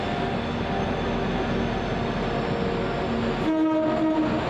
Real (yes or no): yes